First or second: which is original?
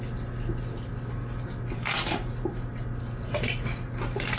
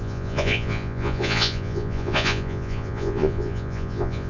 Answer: first